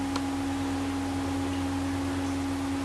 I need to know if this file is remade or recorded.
recorded